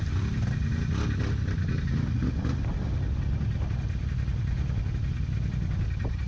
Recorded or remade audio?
recorded